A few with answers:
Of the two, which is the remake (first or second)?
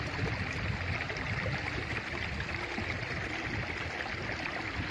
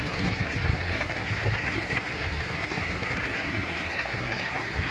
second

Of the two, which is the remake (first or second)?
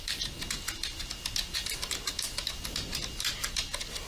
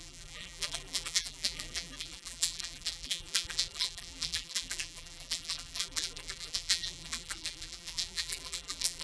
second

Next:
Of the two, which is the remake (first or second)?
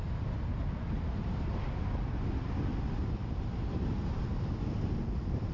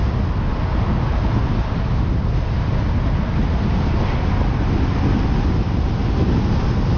first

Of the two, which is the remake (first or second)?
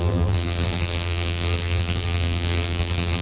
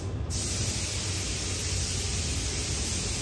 first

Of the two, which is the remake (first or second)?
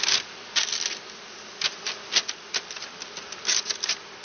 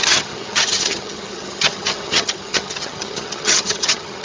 second